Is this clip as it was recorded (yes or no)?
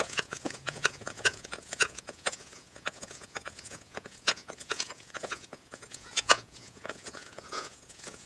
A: no